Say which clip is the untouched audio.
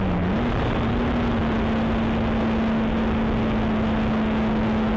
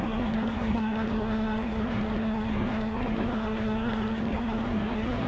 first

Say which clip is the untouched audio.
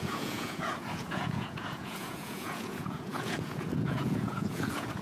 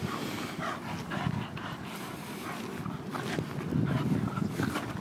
second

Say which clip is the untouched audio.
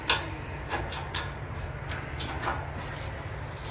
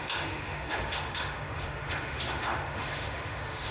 first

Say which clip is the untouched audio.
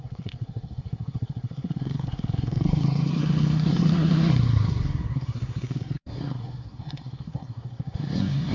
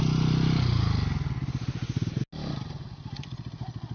second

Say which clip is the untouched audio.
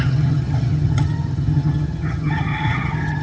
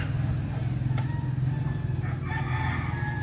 second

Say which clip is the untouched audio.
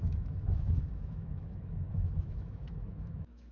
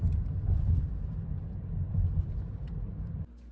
second